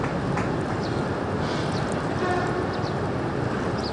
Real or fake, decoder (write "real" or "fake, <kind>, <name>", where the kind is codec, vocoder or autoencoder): real